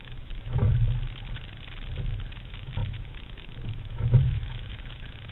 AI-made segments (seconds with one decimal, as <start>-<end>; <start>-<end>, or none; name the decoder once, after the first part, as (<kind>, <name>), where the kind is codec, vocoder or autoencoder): 0.0-0.6 (autoencoder, DAC-VAE); 2.4-5.3